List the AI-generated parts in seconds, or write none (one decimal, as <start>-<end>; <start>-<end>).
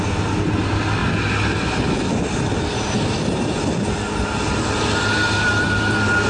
none